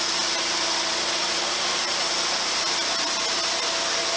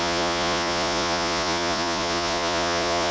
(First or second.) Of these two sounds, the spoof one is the second